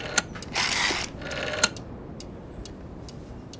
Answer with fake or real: real